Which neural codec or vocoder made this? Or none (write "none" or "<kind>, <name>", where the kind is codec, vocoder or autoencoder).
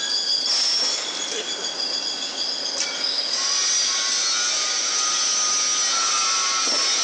none